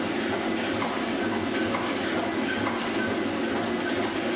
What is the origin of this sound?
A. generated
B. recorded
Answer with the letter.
B